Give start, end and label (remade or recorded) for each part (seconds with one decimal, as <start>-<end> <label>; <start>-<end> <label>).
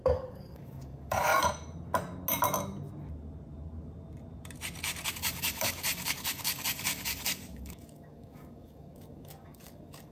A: 0.0-1.3 remade; 1.3-5.1 recorded; 5.1-10.1 remade